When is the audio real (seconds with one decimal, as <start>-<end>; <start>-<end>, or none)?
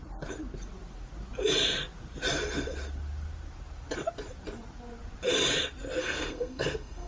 0.0-6.0